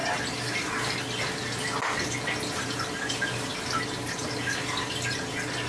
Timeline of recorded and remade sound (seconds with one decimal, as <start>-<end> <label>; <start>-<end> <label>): 0.0-5.7 recorded